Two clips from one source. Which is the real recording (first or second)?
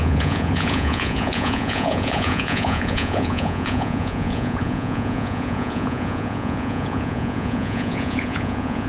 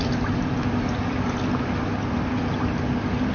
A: second